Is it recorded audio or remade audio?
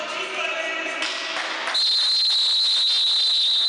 recorded